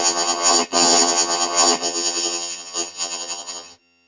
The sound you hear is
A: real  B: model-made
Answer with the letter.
B